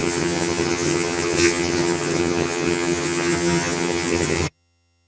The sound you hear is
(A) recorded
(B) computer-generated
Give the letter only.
B